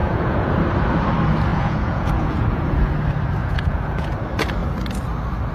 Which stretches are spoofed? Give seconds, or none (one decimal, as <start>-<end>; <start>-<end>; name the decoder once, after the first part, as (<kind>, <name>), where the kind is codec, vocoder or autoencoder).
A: 0.0-0.5 (vocoder, Vocos); 1.5-2.9; 3.4-4.1